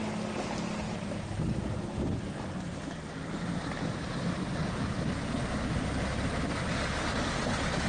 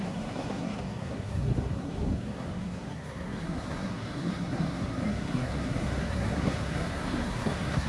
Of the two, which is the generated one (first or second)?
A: second